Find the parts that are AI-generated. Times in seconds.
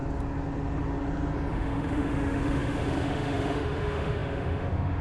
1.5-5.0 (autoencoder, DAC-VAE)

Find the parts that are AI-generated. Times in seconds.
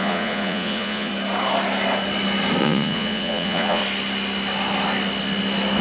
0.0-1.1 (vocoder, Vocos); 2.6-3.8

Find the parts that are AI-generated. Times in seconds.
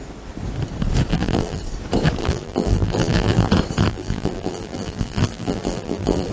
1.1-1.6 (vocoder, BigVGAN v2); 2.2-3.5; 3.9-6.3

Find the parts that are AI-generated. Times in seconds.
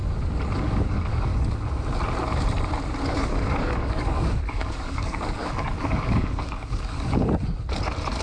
0.6-1.3 (codec, DAC); 3.1-7.2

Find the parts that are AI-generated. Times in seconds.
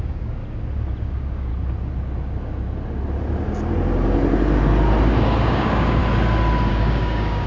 0.0-0.4 (codec, DAC); 1.0-1.5; 5.4-6.0; 6.7-7.5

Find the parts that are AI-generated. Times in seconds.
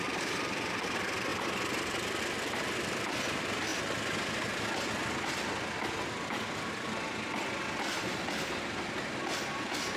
0.0-1.3 (vocoder, BigVGAN v2); 2.2-3.7; 7.8-10.0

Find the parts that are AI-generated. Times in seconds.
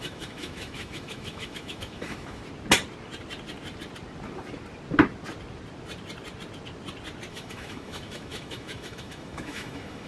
0.0-2.4 (autoencoder, DAC-VAE); 7.3-10.1